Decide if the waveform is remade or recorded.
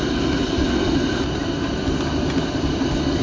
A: recorded